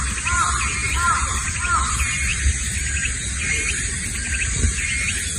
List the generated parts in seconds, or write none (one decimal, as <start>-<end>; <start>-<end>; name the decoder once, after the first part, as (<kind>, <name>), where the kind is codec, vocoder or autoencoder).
0.8-1.5 (vocoder, BigVGAN v2); 2.3-3.7